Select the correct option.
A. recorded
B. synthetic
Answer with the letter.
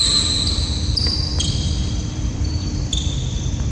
B